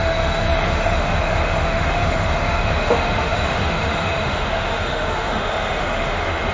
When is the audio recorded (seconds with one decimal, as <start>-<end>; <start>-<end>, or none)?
none